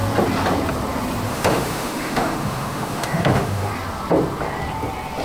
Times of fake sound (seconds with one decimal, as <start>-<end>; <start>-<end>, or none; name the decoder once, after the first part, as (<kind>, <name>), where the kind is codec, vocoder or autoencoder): 1.3-3.7 (autoencoder, DAC-VAE)